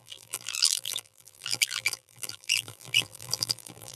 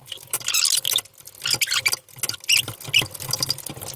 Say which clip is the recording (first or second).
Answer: second